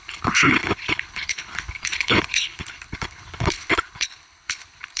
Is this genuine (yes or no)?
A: no